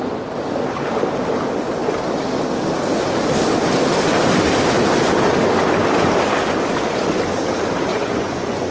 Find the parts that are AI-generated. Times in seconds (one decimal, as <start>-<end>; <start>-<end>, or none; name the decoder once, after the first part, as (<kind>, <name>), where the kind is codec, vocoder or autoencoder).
7.9-8.7 (vocoder, Vocos)

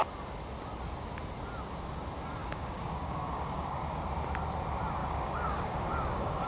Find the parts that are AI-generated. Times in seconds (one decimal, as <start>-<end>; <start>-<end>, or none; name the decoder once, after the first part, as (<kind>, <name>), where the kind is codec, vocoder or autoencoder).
2.4-4.0 (codec, DAC); 5.0-6.5

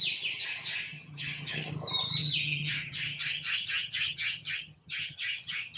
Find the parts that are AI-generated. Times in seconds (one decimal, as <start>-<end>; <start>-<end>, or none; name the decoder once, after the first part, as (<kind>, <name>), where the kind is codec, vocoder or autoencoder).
0.9-1.7 (vocoder, HiFi-GAN); 2.2-5.8

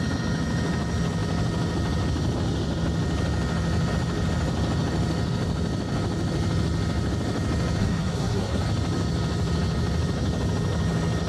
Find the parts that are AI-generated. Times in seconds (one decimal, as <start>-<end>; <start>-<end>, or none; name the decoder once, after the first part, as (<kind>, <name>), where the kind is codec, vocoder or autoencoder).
7.8-8.6 (codec, SNAC)

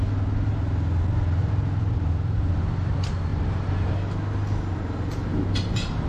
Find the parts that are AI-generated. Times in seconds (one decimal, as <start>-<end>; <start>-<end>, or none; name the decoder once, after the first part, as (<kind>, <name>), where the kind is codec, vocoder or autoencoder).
1.4-2.5 (vocoder, BigVGAN v2); 3.3-3.9